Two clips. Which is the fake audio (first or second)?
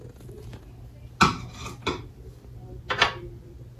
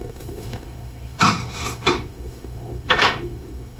second